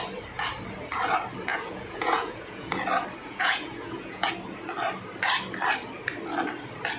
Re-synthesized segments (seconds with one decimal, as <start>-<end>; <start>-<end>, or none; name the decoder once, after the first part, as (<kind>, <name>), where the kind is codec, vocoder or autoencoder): 1.5-2.7 (vocoder, Vocos); 3.2-4.3